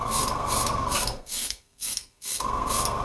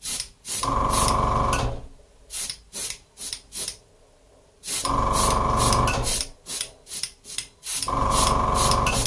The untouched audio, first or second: second